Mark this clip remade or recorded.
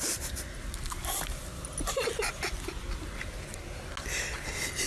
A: recorded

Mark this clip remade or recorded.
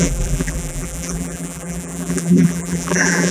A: remade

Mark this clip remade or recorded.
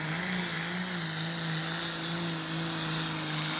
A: recorded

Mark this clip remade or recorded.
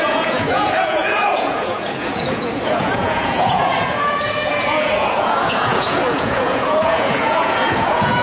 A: remade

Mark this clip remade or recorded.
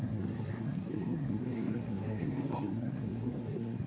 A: remade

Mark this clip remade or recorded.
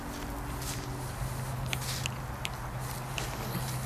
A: recorded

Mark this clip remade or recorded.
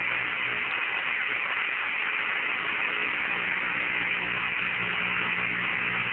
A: recorded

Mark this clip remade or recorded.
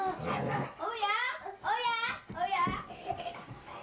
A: recorded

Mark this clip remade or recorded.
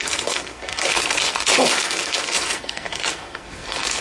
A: remade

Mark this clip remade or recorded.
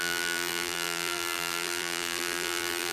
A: remade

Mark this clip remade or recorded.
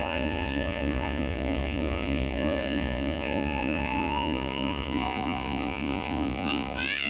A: remade